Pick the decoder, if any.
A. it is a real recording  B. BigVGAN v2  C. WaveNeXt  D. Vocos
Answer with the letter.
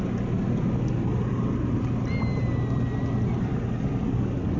A